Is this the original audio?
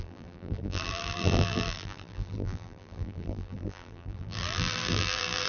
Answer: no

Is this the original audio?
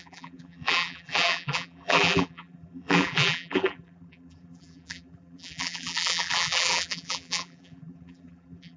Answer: no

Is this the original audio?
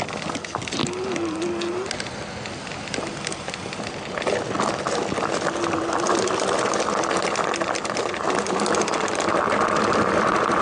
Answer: yes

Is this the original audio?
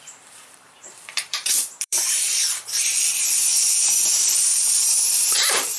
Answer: no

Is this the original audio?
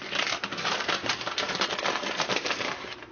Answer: no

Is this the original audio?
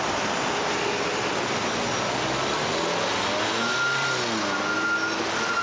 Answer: yes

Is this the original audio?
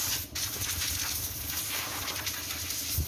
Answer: no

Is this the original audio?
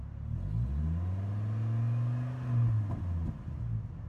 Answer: yes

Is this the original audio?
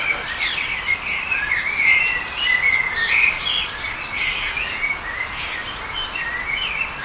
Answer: no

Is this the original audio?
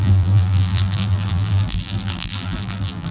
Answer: no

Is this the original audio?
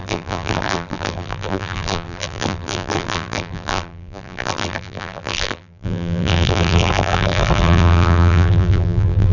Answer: no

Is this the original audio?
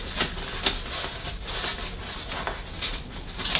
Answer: yes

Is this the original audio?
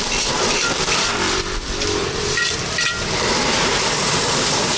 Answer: no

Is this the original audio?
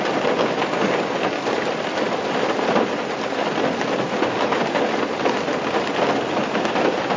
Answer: yes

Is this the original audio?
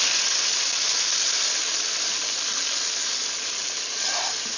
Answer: yes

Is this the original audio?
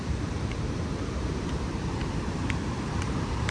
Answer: no